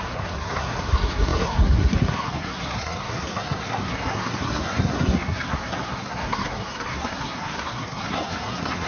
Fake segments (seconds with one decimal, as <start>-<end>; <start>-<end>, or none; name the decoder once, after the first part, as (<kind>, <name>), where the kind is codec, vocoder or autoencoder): 0.0-8.9 (codec, SNAC)